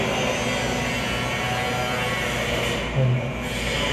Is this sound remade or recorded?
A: recorded